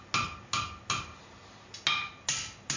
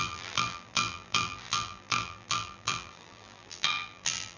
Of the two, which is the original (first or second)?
first